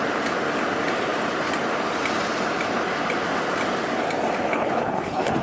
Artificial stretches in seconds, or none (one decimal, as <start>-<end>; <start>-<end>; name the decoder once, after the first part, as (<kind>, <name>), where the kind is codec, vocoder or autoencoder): 4.5-5.4 (codec, HILCodec)